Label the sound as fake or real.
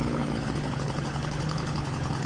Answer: fake